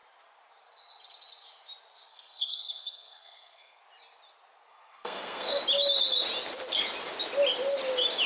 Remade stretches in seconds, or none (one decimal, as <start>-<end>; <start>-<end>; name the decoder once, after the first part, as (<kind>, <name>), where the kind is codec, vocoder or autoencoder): 2.1-3.8 (codec, SNAC); 4.7-5.6